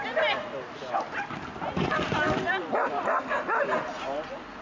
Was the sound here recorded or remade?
recorded